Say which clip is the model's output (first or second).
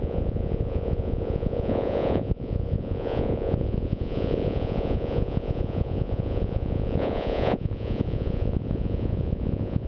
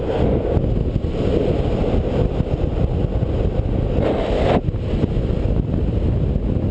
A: first